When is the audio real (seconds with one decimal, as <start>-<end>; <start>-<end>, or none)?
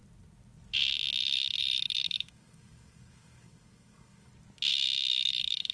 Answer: 0.0-1.2; 4.3-5.1